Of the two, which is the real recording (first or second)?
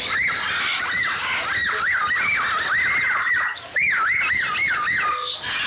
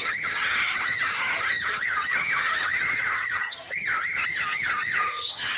first